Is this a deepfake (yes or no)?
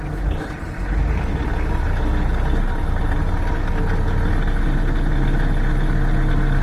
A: no